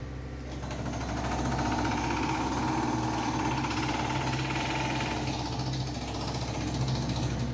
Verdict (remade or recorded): recorded